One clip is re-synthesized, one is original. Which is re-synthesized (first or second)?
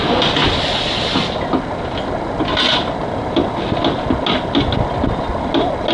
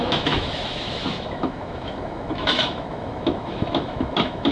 second